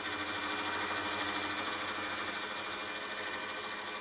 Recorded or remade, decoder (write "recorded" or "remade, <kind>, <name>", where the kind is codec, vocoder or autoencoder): recorded